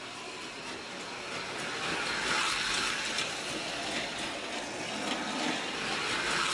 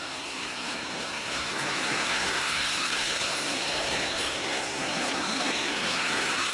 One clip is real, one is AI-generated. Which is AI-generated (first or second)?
second